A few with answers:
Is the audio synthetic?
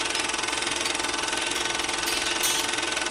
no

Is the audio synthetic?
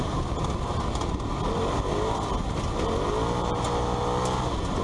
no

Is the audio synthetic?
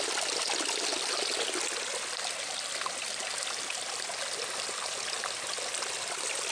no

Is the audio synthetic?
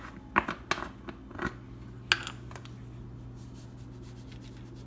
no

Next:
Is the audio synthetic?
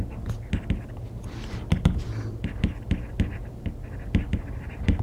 no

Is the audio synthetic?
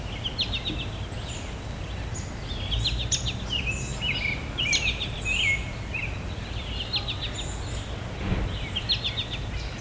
no